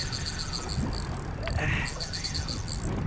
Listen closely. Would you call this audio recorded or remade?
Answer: recorded